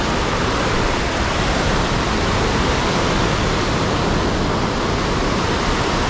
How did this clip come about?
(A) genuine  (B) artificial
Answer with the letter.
A